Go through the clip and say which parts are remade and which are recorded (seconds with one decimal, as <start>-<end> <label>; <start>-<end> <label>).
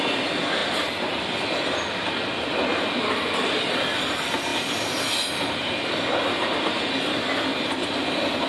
0.0-8.5 recorded